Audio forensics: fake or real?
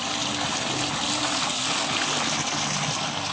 real